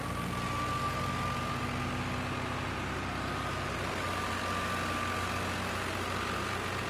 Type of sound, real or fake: real